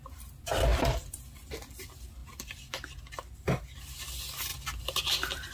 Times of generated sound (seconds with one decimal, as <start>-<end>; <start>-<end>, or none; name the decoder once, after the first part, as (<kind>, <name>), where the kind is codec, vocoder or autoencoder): 0.0-4.5 (vocoder, BigVGAN v2); 5.1-5.5